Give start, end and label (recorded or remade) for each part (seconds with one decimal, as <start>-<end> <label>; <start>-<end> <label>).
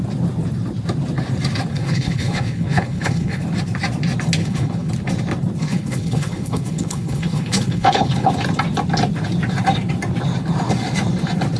0.0-1.7 recorded; 1.7-3.4 remade; 3.4-4.4 recorded; 4.4-4.9 remade; 4.9-5.6 recorded; 5.6-8.3 remade; 8.3-11.6 recorded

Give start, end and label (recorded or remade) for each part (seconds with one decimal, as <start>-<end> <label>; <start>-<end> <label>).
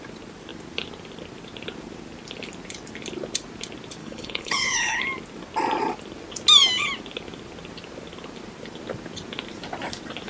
0.0-4.0 recorded; 4.0-5.0 remade; 5.0-10.3 recorded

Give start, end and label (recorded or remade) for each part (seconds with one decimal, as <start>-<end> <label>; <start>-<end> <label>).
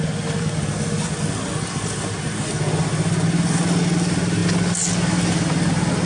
0.0-6.1 recorded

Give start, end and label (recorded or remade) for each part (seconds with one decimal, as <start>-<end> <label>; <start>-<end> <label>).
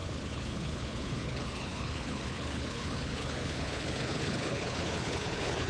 0.0-5.7 remade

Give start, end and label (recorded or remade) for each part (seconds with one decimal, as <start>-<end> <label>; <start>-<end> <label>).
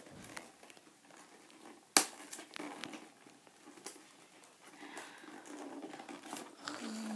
0.0-7.2 recorded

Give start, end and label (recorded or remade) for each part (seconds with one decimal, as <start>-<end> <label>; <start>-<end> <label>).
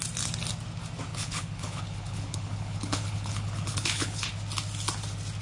0.0-1.1 recorded; 1.1-4.3 remade; 4.3-5.4 recorded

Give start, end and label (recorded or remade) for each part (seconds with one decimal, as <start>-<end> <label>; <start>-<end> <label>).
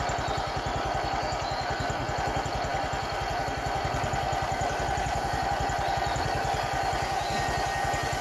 0.0-8.2 recorded